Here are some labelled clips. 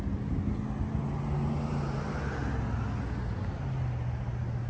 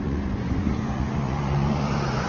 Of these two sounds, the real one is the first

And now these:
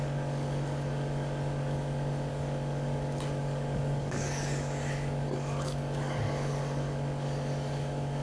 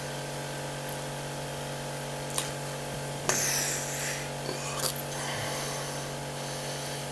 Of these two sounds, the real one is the second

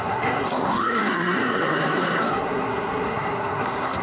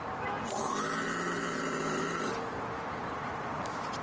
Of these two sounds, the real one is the second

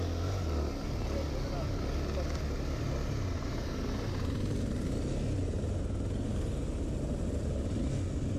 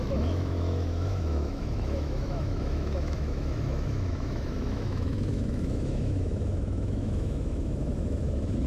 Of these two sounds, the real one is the first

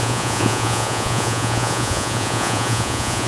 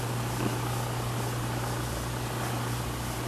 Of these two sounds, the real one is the second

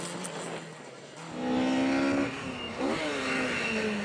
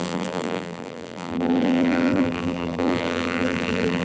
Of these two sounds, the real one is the first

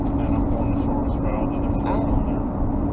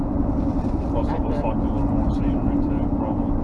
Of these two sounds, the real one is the first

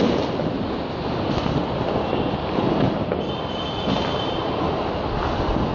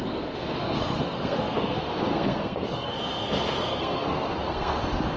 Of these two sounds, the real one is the first